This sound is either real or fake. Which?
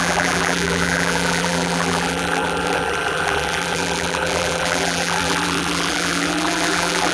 fake